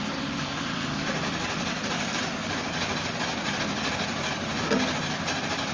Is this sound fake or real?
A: real